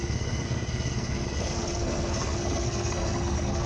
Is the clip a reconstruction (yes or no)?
yes